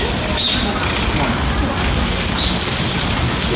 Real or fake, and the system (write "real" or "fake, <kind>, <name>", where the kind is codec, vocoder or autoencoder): real